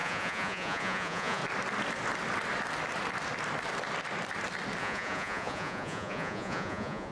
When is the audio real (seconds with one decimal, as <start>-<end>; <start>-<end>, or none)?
1.4-4.8